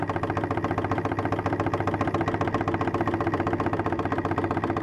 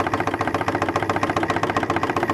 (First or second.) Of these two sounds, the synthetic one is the second